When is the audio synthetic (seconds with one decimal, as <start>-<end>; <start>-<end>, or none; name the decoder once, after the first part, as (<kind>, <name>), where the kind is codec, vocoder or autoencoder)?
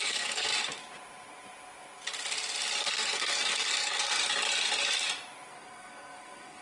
0.0-0.5 (codec, SNAC); 2.8-4.2; 5.5-6.6